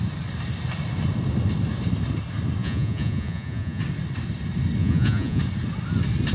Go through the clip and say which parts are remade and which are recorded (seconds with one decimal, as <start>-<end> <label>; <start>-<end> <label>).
0.0-2.6 recorded; 2.6-3.8 remade; 3.8-4.8 recorded; 4.8-5.4 remade; 5.4-6.3 recorded